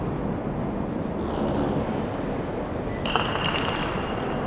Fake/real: real